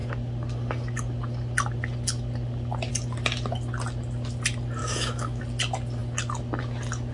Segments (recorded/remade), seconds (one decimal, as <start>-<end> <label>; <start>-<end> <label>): 0.0-4.8 recorded; 4.8-5.4 remade; 5.4-7.1 recorded